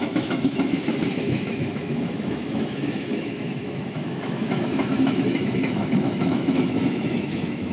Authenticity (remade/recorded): remade